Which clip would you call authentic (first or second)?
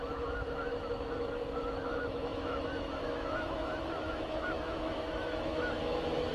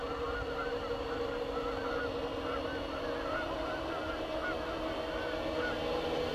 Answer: second